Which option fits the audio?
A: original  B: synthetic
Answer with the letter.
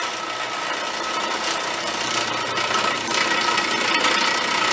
A